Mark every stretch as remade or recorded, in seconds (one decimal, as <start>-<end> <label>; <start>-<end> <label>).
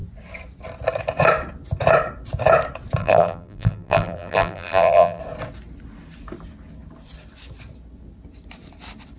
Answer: 0.0-3.0 recorded; 3.0-5.2 remade; 5.2-9.2 recorded